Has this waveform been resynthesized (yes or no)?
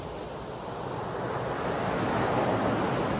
no